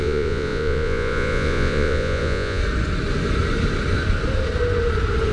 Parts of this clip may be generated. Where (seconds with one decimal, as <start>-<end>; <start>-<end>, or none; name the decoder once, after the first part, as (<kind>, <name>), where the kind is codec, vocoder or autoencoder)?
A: 0.0-2.6 (vocoder, Vocos)